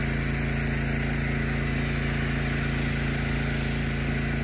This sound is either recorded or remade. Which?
recorded